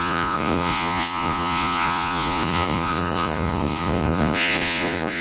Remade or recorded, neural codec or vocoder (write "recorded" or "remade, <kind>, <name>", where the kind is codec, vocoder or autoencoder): remade, vocoder, Vocos